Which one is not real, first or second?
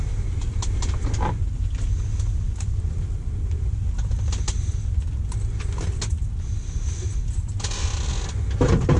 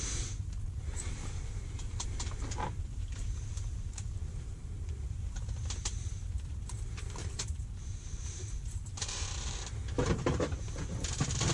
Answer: second